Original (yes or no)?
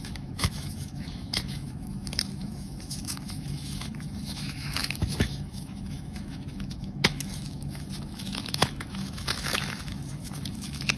no